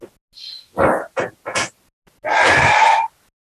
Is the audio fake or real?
real